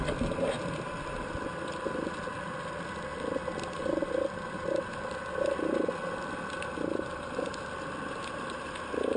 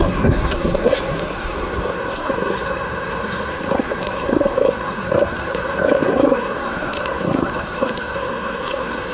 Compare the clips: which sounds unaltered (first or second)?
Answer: first